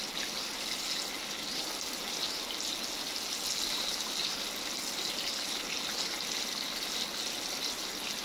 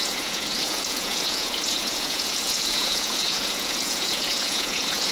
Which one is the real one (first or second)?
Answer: first